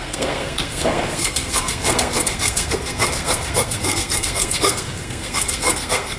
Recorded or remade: remade